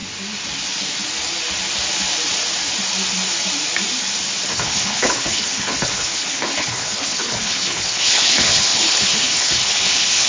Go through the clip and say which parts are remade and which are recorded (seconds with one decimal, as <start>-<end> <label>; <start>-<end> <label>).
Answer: 0.0-4.5 recorded; 4.5-10.3 remade